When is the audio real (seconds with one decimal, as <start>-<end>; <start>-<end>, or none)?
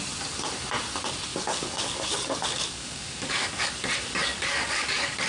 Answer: 0.0-1.3; 3.7-4.3